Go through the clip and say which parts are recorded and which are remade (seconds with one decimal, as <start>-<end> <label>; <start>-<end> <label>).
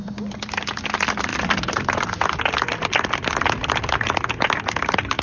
0.0-5.2 recorded